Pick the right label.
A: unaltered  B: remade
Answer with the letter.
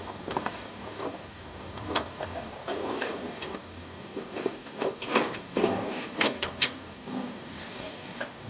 B